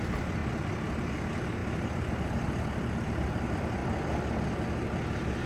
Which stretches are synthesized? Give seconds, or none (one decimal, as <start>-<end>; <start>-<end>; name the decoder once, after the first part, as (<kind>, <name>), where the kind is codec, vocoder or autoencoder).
0.0-0.4 (vocoder, BigVGAN v2); 1.0-3.8

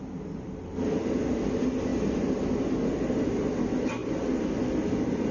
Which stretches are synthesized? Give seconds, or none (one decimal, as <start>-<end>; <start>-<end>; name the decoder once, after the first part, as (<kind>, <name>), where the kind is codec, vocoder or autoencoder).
1.9-2.7 (vocoder, BigVGAN v2)

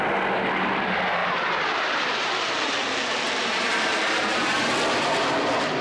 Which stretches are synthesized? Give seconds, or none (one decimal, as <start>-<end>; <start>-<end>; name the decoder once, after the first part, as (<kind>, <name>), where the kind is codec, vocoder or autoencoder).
1.2-4.7 (vocoder, BigVGAN v2)

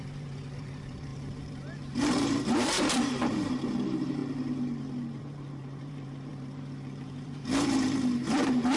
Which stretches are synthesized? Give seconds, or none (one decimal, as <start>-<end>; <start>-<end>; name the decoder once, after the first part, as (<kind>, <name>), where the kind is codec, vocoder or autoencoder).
0.0-4.2 (vocoder, BigVGAN v2); 5.2-6.3; 7.0-8.8

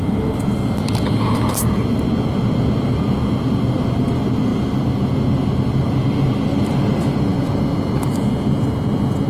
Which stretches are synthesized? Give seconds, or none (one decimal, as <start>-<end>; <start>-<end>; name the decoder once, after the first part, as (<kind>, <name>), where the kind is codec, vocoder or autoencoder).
none